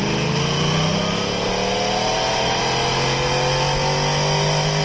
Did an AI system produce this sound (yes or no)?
no